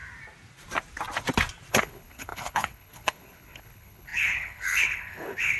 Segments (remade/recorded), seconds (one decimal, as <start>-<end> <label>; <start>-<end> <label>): 0.0-1.7 recorded; 1.7-5.6 remade

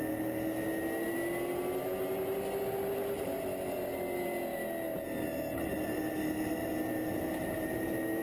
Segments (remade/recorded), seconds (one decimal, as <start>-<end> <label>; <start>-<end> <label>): 0.0-8.2 recorded

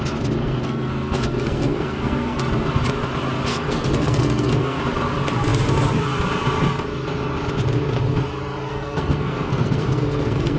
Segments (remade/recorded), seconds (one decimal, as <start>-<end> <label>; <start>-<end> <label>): 0.0-0.4 recorded; 0.4-2.4 remade; 2.4-3.5 recorded; 3.5-4.8 remade; 4.8-8.7 recorded; 8.7-10.6 remade